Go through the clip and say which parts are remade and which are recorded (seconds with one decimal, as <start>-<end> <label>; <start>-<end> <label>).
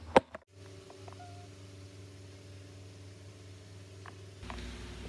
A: 0.0-5.1 recorded